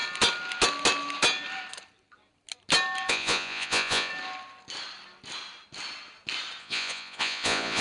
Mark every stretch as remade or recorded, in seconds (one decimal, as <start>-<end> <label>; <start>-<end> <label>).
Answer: 0.0-3.1 recorded; 3.1-4.1 remade; 4.1-6.6 recorded; 6.6-7.8 remade